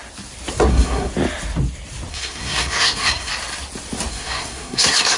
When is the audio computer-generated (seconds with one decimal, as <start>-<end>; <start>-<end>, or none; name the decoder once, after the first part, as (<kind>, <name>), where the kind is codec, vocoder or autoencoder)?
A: 0.7-1.1 (codec, SNAC); 2.1-3.3; 4.1-5.2